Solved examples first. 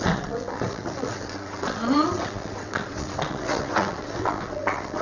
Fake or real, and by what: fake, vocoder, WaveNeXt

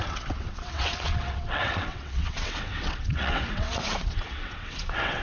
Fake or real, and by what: fake, vocoder, WaveNeXt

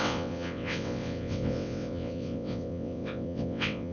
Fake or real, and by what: fake, vocoder, WaveNeXt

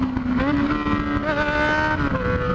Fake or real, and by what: real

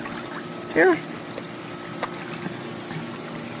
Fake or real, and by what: real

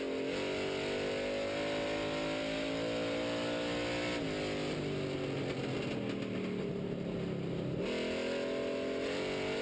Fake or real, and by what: real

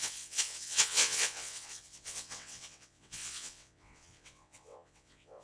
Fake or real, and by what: fake, vocoder, WaveNeXt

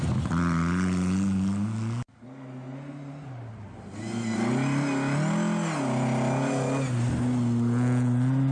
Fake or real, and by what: real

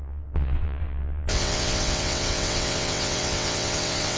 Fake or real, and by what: fake, vocoder, WaveNeXt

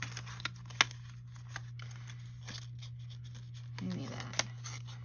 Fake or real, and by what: real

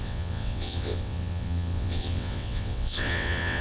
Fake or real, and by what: fake, vocoder, WaveNeXt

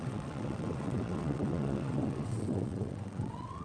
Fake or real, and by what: fake, vocoder, WaveNeXt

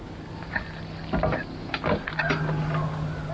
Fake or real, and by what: real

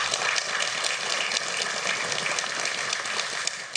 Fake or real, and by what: real